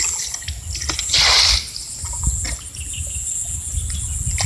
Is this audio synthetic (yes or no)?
no